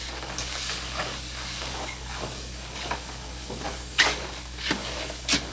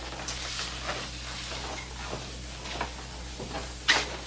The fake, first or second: first